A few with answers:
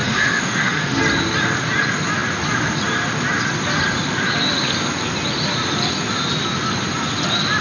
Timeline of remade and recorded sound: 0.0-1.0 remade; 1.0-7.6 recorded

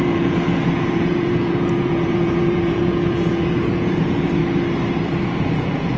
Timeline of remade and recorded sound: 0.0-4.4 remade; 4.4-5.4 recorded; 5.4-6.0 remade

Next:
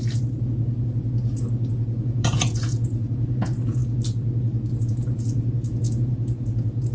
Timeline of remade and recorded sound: 0.0-1.7 recorded; 1.7-3.8 remade; 3.8-4.8 recorded; 4.8-6.9 remade

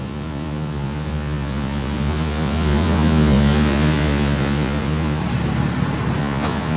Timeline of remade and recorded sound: 0.0-5.2 remade; 5.2-6.2 recorded; 6.2-6.8 remade

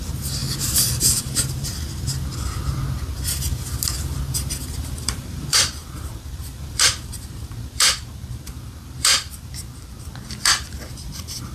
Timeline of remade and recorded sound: 0.0-0.4 remade; 0.4-1.0 recorded; 1.0-1.7 remade; 1.7-4.8 recorded; 4.8-11.5 remade

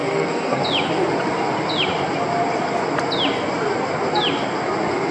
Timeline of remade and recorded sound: 0.0-0.6 remade; 0.6-5.1 recorded